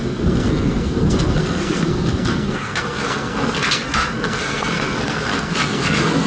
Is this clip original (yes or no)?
no